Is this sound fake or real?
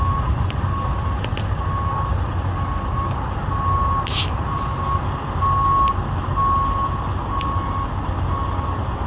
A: real